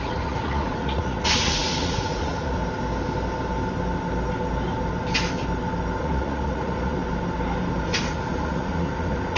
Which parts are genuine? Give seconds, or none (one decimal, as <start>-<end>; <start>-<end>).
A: 2.6-6.0; 7.0-7.8